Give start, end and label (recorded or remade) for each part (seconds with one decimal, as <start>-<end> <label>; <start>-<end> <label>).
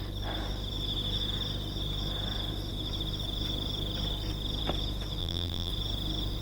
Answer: 0.0-5.2 recorded; 5.2-5.7 remade; 5.7-6.4 recorded